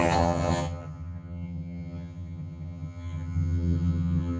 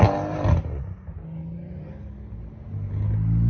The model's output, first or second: first